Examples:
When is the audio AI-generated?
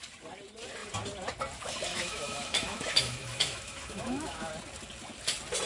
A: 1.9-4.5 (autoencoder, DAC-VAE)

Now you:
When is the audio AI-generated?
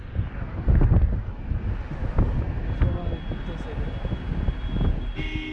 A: none